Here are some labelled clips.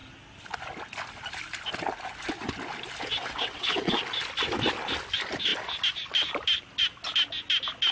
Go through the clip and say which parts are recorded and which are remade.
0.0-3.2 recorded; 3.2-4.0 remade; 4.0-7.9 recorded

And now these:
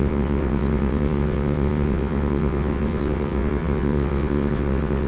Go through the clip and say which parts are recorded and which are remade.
0.0-5.1 remade

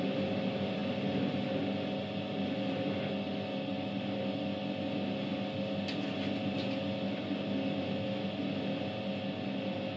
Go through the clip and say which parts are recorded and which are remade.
0.0-10.0 recorded

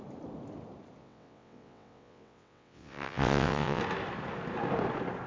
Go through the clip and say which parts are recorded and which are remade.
0.0-1.0 recorded; 1.0-3.8 remade; 3.8-5.3 recorded